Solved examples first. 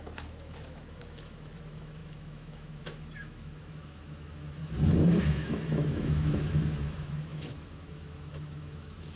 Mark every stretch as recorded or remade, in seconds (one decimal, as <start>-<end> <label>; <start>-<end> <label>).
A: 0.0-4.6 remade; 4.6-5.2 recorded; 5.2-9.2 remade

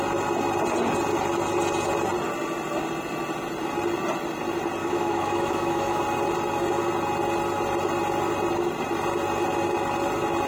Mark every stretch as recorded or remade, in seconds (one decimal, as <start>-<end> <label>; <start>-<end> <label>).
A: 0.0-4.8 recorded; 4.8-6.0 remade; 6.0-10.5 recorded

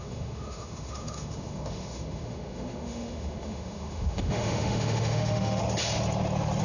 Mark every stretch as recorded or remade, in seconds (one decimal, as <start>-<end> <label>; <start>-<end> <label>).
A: 0.0-5.6 remade; 5.6-6.6 recorded

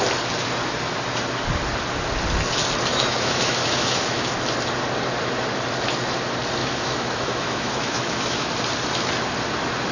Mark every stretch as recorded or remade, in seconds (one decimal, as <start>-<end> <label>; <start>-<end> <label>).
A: 0.0-2.9 recorded; 2.9-4.3 remade; 4.3-6.6 recorded; 6.6-8.5 remade; 8.5-9.9 recorded

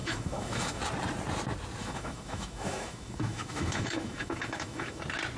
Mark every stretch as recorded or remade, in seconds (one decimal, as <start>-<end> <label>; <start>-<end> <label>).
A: 0.0-0.8 remade; 0.8-1.8 recorded; 1.8-5.0 remade; 5.0-5.4 recorded

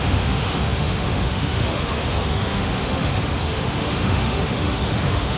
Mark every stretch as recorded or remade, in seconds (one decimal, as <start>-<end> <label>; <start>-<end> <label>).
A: 0.0-5.4 remade

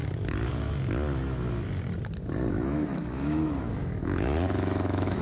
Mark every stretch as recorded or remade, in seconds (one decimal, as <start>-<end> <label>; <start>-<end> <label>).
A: 0.0-2.5 recorded; 2.5-5.2 remade